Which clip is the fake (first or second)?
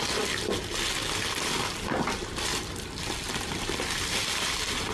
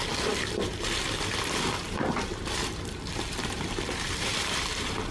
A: second